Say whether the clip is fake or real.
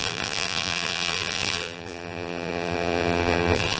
fake